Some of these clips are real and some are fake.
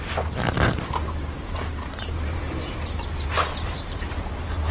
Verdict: fake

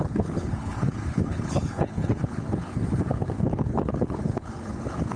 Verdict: fake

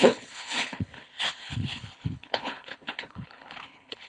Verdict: fake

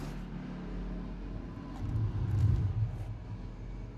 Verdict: real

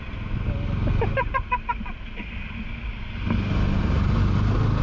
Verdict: real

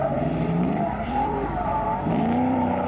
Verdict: fake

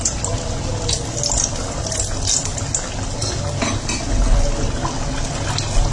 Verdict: real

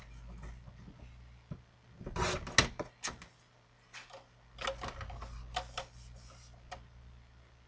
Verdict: real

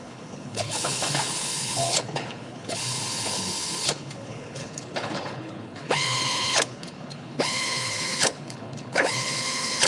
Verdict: fake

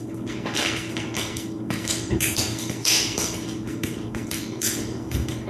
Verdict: fake